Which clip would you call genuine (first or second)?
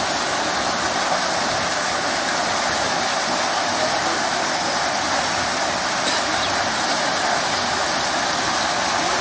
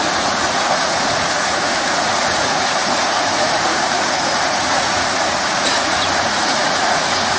first